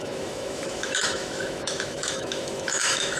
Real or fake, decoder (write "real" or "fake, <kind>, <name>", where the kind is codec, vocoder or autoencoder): fake, autoencoder, DAC-VAE